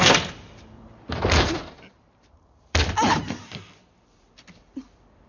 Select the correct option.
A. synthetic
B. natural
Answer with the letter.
A